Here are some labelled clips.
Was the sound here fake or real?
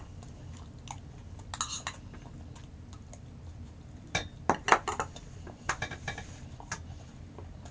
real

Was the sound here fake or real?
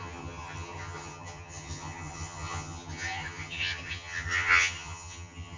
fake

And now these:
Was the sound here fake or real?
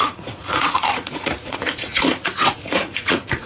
fake